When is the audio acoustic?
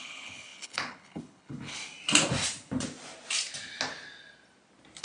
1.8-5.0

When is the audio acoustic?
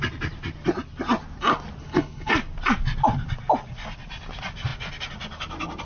0.0-1.8; 2.3-5.8